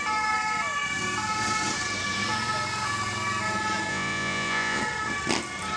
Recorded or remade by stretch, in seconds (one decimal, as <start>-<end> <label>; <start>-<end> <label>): 0.0-3.9 recorded; 3.9-4.8 remade; 4.8-5.8 recorded